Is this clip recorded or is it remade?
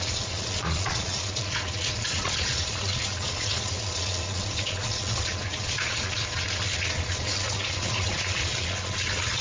remade